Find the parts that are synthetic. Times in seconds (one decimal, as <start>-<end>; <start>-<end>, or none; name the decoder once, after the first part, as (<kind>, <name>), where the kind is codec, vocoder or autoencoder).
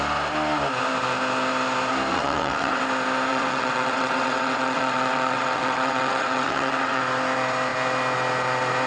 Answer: 2.1-2.8 (vocoder, WaveNeXt); 3.3-7.0